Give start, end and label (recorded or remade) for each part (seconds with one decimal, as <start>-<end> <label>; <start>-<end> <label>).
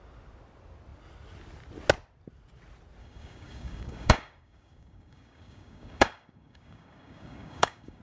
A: 0.0-3.0 recorded; 3.0-8.0 remade